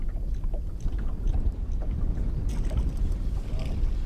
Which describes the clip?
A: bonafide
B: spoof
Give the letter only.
A